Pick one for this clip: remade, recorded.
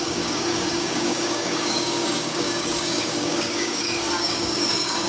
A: remade